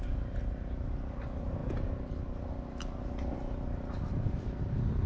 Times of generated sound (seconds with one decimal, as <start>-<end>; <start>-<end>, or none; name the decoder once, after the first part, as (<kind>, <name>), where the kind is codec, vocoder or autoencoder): none